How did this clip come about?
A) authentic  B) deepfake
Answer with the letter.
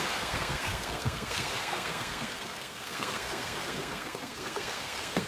B